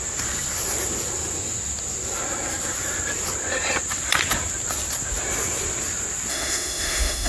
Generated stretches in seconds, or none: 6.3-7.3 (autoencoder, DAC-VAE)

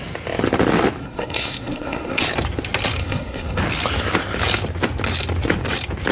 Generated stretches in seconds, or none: 1.0-2.2 (codec, SNAC); 3.0-3.6

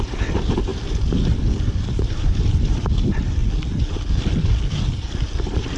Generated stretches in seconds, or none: 0.0-3.4 (vocoder, BigVGAN v2); 5.0-5.8